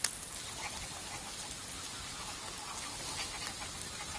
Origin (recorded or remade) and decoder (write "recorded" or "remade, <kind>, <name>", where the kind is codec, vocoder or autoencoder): recorded